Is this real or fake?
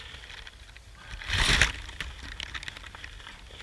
real